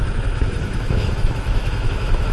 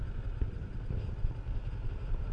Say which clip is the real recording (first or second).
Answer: second